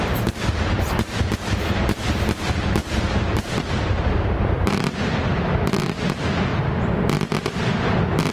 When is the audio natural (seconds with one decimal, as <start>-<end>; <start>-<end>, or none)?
6.5-8.3